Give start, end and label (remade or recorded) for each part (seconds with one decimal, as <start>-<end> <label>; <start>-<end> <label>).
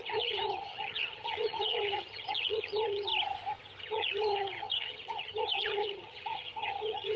0.0-3.1 remade; 3.1-3.8 recorded; 3.8-7.2 remade